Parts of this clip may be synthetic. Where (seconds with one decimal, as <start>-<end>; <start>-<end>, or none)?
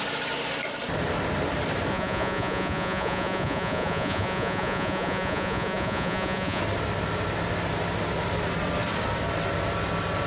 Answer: 1.9-6.6